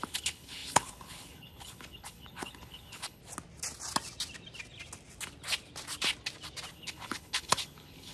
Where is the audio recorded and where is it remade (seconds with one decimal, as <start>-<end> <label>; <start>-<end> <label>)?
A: 0.0-3.2 remade; 3.2-6.7 recorded; 6.7-8.1 remade